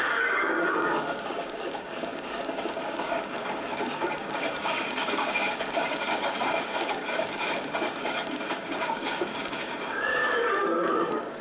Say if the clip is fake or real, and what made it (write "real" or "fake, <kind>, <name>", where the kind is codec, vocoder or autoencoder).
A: fake, codec, DAC